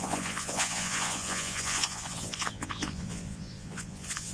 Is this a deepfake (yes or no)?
yes